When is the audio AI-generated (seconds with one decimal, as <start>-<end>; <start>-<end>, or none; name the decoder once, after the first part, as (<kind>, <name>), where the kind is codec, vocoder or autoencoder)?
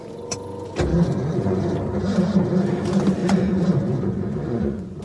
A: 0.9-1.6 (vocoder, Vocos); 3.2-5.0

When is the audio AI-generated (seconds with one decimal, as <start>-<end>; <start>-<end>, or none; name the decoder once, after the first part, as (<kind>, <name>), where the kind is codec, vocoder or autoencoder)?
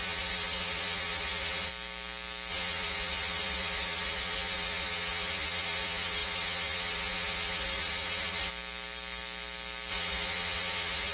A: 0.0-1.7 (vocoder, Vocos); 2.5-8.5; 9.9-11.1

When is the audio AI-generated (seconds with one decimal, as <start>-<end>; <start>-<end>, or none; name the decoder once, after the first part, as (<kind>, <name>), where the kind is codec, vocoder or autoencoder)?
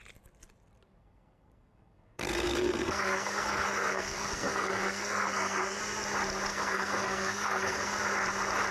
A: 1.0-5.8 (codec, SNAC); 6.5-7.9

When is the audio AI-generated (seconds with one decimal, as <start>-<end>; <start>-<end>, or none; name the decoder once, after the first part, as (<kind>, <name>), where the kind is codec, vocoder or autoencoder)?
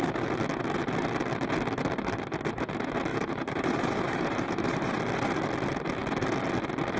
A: 3.1-5.0 (vocoder, BigVGAN v2)